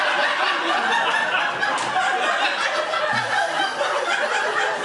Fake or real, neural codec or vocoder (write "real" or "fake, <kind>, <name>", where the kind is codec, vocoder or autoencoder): real